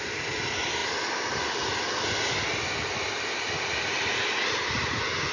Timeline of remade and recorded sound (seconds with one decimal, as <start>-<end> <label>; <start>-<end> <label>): 0.0-5.3 recorded